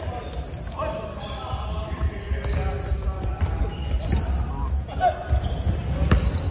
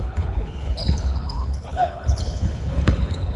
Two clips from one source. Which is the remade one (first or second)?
second